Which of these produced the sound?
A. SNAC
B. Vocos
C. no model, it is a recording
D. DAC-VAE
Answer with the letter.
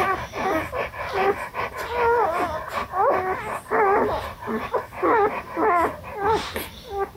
C